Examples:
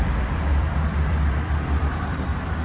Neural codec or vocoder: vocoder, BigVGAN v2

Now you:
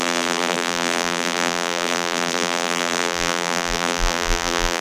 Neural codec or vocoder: vocoder, BigVGAN v2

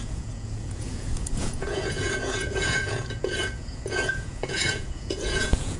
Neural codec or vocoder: vocoder, Vocos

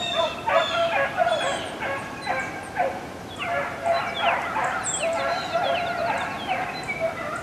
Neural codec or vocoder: none